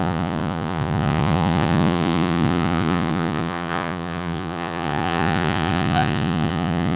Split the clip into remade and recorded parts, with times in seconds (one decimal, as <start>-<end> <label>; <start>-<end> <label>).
0.0-7.0 remade